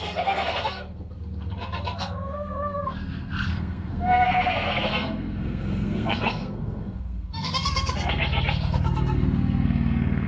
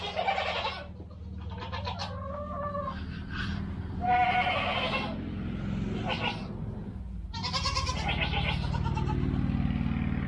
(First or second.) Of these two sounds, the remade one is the first